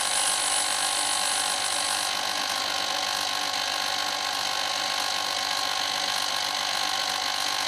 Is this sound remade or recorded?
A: recorded